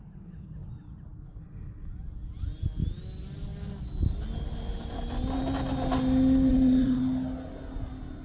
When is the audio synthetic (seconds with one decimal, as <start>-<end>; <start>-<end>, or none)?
6.5-7.0